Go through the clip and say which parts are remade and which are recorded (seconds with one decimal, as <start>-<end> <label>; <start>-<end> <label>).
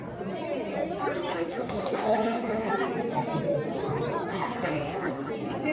0.0-1.3 recorded; 1.3-2.7 remade; 2.7-4.3 recorded; 4.3-5.3 remade; 5.3-5.7 recorded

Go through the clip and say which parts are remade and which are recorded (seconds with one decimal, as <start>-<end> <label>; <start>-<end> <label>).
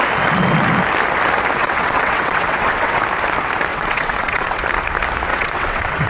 0.0-1.6 recorded; 1.6-3.0 remade; 3.0-3.7 recorded; 3.7-4.6 remade; 4.6-5.3 recorded; 5.3-6.1 remade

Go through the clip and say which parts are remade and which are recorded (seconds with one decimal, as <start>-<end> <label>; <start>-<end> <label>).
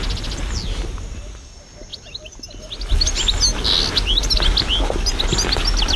0.0-1.9 recorded; 1.9-2.6 remade; 2.6-6.0 recorded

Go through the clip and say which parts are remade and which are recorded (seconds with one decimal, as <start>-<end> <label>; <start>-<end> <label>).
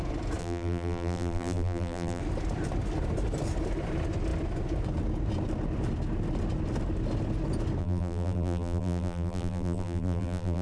0.0-0.4 recorded; 0.4-2.2 remade; 2.2-7.8 recorded; 7.8-10.6 remade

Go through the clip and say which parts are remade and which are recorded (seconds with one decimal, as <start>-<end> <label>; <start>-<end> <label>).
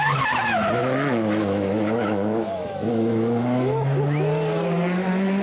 0.0-0.8 recorded; 0.8-4.0 remade; 4.0-5.4 recorded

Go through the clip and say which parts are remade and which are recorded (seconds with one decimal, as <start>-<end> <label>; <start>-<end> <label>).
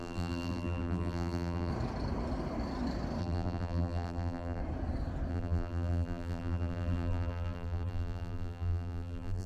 0.0-1.7 remade; 1.7-3.2 recorded; 3.2-4.6 remade; 4.6-5.3 recorded; 5.3-9.5 remade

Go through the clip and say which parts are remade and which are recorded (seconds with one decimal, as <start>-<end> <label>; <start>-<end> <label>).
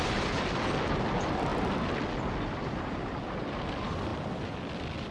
0.0-1.5 remade; 1.5-3.2 recorded; 3.2-5.1 remade